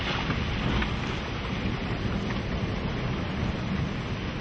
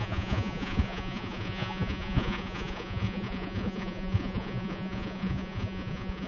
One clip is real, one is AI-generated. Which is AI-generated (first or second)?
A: second